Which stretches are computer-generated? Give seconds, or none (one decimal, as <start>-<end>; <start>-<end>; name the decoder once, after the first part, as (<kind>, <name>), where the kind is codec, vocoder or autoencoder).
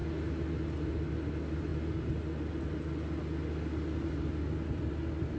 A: none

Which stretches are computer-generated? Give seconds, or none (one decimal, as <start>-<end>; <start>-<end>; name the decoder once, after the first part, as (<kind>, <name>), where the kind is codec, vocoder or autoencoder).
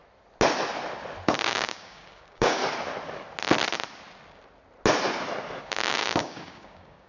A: 1.5-2.6 (codec, DAC); 5.6-7.1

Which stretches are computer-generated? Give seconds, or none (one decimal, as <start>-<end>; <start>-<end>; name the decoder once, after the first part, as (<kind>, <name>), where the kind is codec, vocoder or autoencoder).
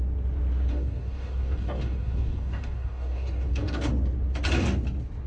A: 0.7-3.9 (codec, DAC)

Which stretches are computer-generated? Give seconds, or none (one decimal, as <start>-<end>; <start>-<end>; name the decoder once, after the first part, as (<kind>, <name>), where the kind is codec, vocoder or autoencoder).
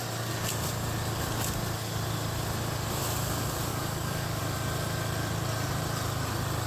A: 3.7-4.4 (codec, DAC)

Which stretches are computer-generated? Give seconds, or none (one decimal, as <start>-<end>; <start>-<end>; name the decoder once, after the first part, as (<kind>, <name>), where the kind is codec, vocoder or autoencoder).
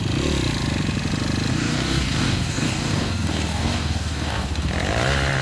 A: 1.5-4.7 (codec, DAC)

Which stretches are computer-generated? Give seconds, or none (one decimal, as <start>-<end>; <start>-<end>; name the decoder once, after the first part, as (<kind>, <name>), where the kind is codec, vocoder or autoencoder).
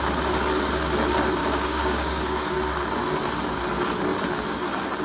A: 1.4-2.5 (codec, DAC)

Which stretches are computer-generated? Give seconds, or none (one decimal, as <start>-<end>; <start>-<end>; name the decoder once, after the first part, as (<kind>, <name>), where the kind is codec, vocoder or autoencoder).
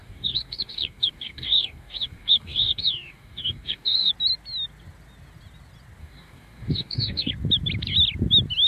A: 0.0-4.1 (codec, DAC); 6.0-7.3